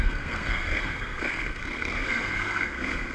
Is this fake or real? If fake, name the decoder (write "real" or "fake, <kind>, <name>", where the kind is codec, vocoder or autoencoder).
fake, codec, SNAC